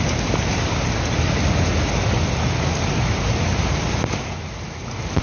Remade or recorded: recorded